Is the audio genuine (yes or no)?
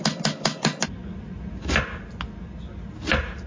yes